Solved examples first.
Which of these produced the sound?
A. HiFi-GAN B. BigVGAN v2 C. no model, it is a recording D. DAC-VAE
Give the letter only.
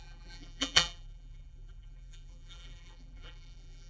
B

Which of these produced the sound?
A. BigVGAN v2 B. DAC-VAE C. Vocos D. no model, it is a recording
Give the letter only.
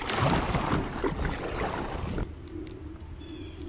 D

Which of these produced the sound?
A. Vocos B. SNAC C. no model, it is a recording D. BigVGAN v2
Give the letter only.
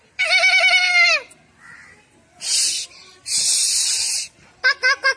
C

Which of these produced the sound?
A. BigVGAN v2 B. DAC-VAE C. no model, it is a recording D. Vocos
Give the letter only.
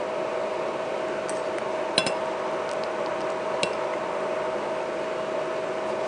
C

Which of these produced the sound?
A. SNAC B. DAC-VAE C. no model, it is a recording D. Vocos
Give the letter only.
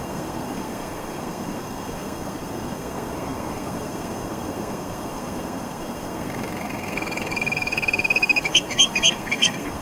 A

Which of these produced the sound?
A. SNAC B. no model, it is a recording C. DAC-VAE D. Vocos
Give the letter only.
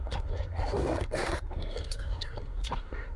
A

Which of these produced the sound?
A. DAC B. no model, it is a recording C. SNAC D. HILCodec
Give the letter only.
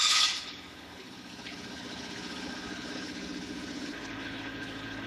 D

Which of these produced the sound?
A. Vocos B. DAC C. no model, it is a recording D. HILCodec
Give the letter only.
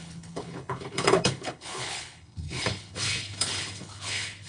D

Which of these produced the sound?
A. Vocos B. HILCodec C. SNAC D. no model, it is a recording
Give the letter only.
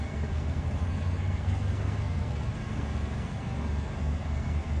C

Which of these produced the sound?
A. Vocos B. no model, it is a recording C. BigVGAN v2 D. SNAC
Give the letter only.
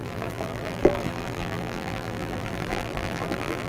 C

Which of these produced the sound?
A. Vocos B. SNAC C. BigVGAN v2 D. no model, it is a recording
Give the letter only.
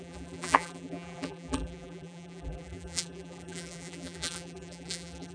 C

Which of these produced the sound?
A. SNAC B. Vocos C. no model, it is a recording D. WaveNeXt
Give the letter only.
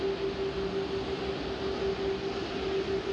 C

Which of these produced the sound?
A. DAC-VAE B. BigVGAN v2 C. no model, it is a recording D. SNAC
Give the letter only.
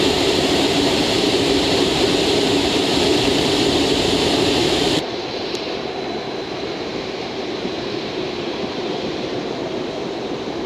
B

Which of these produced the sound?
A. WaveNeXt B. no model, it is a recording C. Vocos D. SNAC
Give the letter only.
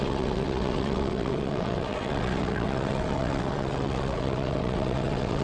A